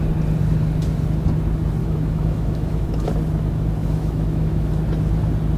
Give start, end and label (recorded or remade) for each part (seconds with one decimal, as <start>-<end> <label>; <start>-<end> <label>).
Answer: 0.0-1.8 recorded; 1.8-3.1 remade; 3.1-3.8 recorded; 3.8-4.7 remade; 4.7-5.6 recorded